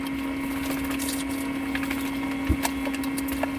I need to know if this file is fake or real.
real